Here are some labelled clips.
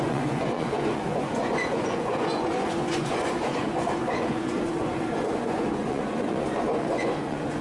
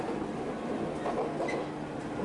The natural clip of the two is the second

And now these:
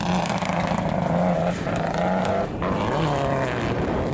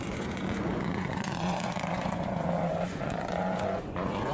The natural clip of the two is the first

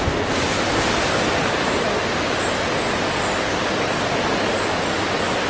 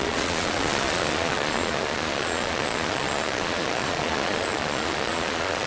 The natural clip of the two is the first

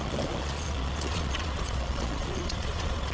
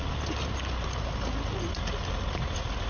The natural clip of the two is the second